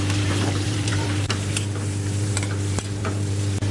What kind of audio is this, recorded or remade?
remade